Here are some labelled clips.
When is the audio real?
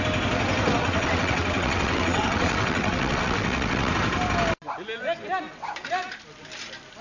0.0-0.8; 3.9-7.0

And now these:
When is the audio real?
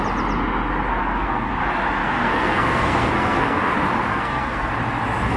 0.0-1.0; 1.5-2.0; 3.6-4.1; 4.7-5.4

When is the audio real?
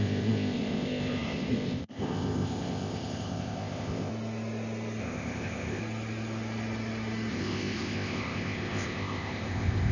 4.1-5.0; 5.8-7.3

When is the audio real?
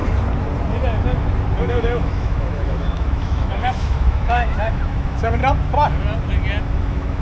0.0-1.6; 5.4-6.6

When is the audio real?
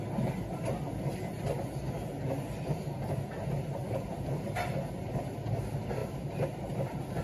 0.0-7.2